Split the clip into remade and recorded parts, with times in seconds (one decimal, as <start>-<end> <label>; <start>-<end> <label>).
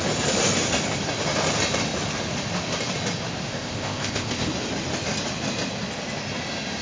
0.0-3.5 recorded; 3.5-4.5 remade; 4.5-6.8 recorded